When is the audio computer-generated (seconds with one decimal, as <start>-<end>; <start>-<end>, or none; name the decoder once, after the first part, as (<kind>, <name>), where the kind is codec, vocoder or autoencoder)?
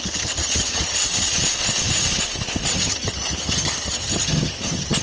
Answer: 0.0-1.0 (vocoder, HiFi-GAN); 2.7-5.0